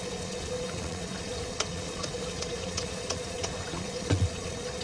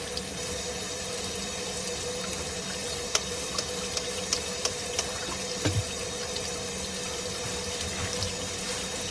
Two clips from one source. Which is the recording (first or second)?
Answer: second